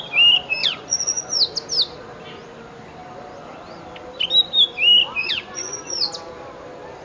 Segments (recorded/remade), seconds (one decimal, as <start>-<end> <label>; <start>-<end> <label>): 0.0-0.6 recorded; 0.6-1.4 remade; 1.4-5.2 recorded; 5.2-6.1 remade; 6.1-7.0 recorded